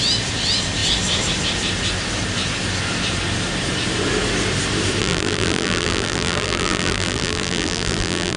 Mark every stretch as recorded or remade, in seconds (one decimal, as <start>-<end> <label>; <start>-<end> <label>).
0.0-5.0 recorded; 5.0-8.4 remade